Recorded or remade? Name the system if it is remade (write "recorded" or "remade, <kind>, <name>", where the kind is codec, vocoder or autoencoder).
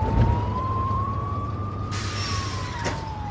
remade, vocoder, BigVGAN v2